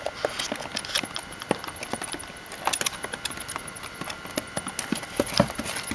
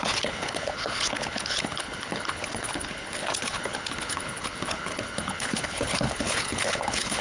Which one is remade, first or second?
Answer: second